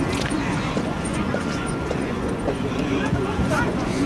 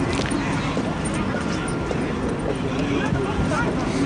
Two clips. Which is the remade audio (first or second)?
first